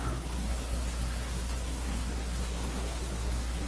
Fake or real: fake